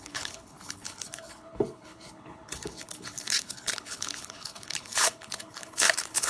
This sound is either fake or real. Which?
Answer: fake